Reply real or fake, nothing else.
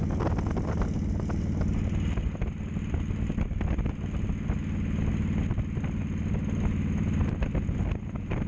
real